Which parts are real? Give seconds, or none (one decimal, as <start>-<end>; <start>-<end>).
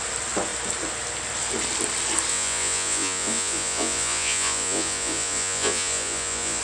0.0-2.3